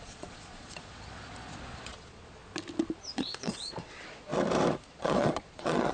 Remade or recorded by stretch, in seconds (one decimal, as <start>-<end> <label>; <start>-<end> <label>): 0.0-2.4 remade; 2.4-3.1 recorded; 3.1-4.3 remade; 4.3-4.9 recorded; 4.9-5.9 remade